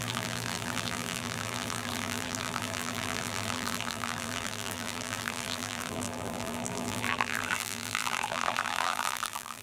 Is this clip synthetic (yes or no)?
yes